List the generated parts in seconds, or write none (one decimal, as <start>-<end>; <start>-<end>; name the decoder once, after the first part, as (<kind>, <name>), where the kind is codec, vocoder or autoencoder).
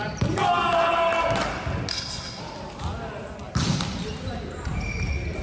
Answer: 1.9-2.4 (codec, SNAC)